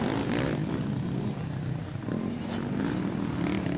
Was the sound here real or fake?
real